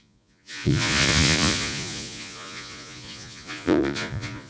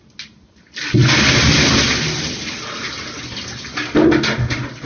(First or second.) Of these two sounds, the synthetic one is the first